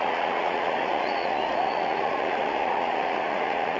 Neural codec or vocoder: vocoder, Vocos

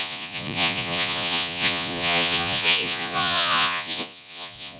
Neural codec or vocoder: vocoder, Vocos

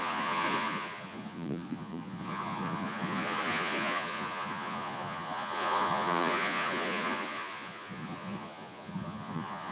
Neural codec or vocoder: vocoder, Vocos